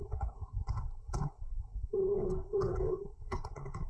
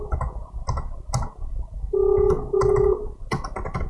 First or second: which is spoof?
first